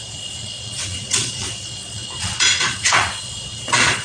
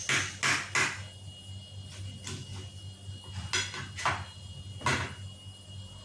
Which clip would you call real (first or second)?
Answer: second